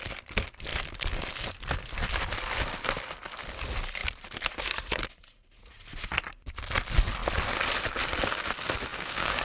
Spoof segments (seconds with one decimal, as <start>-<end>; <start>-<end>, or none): 8.9-9.4